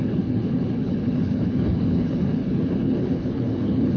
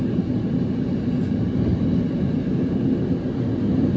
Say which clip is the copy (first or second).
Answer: first